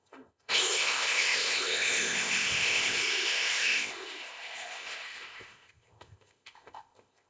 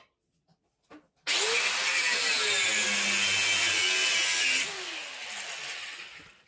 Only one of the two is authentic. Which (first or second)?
second